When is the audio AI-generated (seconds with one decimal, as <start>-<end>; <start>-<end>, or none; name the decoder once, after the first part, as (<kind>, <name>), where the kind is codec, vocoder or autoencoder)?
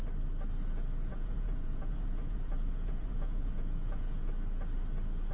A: 1.1-4.3 (vocoder, Vocos)